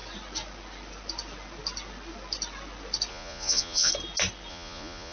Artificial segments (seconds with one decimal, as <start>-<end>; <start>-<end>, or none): 3.1-3.9; 4.5-5.1